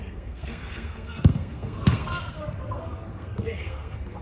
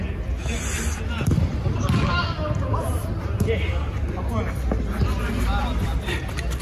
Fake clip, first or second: first